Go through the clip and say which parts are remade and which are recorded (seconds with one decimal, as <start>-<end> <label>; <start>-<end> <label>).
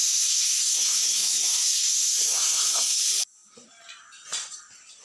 0.0-3.0 remade; 3.0-5.0 recorded